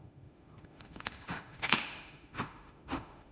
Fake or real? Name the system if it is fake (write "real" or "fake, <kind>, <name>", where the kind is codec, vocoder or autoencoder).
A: fake, autoencoder, DAC-VAE